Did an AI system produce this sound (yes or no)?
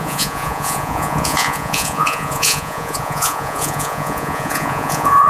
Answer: yes